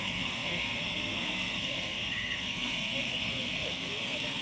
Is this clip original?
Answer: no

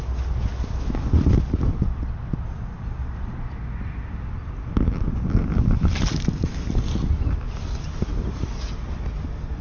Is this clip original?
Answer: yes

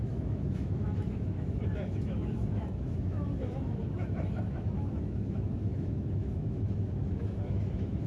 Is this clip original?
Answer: no